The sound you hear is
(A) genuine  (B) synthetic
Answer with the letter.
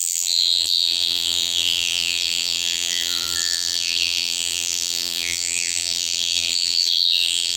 B